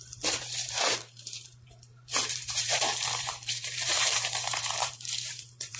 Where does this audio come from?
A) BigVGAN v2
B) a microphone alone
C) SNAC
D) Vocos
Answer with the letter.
A